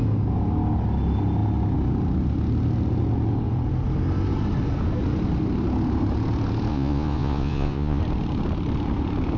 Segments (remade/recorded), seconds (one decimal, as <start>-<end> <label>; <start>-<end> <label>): 0.0-6.7 recorded; 6.7-8.0 remade; 8.0-9.4 recorded